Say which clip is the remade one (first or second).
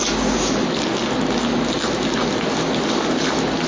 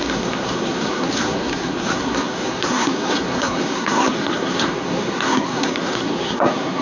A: second